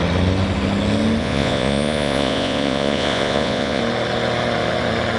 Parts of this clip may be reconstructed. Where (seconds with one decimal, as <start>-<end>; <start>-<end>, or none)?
1.2-3.8